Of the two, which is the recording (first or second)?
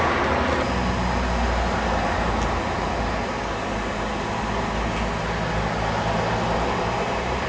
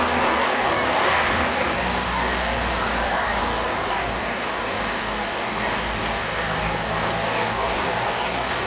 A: first